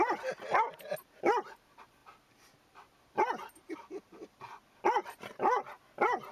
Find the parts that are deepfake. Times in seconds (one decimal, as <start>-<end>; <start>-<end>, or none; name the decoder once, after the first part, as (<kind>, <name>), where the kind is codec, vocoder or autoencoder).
none